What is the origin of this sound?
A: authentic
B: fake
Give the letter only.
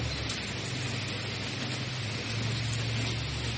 A